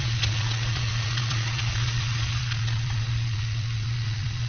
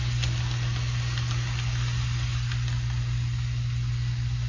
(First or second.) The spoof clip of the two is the first